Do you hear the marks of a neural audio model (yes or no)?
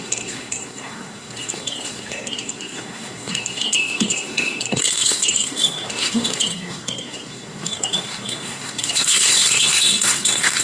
yes